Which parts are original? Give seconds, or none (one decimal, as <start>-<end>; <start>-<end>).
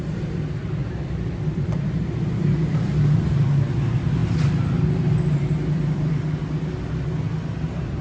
0.0-0.8; 2.1-4.2; 6.4-8.0